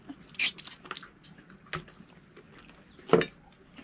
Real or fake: real